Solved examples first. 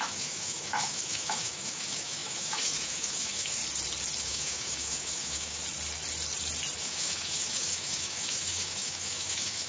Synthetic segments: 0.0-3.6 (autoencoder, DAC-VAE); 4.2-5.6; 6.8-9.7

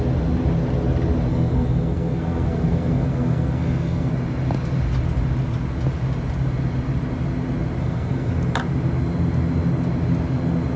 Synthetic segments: 1.3-4.1 (codec, SNAC); 7.8-8.3